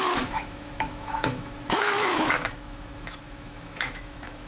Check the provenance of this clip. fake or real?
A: fake